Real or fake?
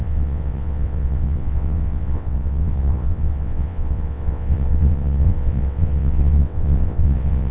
fake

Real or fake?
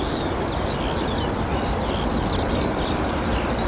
real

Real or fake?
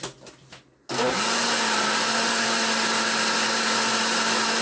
real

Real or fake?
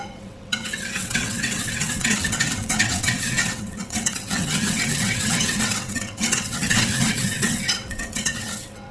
fake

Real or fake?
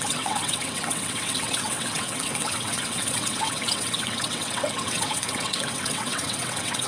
fake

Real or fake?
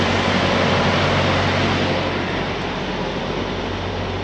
real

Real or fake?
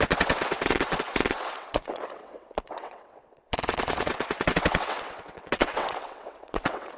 fake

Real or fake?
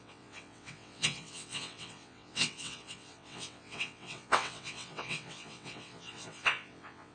fake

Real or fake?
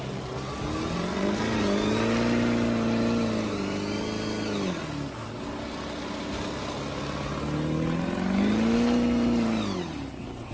real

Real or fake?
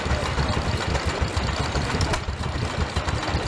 real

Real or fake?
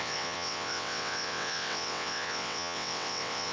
fake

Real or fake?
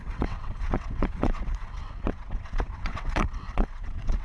fake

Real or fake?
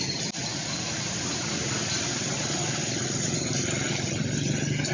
real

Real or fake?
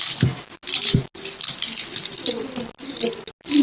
real